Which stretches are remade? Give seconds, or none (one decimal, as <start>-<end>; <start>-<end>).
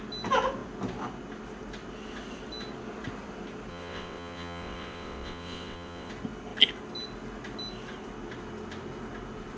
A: 3.7-6.1